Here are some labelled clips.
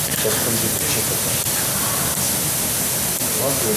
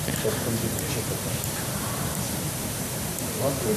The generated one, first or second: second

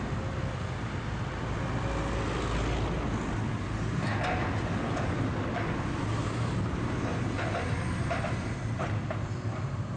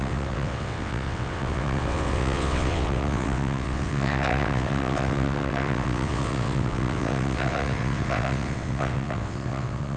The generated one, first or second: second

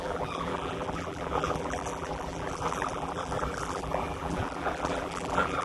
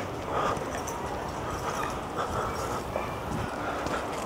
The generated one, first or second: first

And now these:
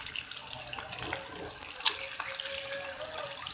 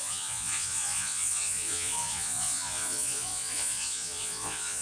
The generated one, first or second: second